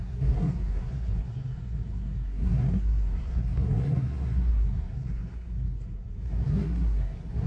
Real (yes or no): no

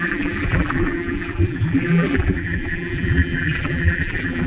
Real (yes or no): no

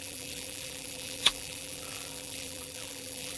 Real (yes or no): no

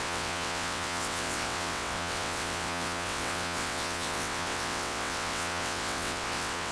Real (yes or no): no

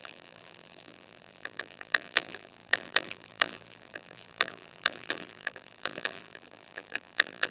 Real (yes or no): no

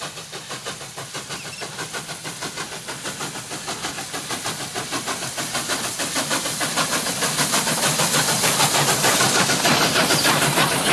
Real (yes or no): yes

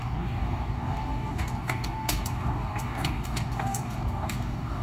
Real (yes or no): no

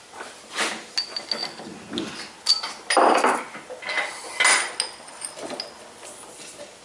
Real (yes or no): yes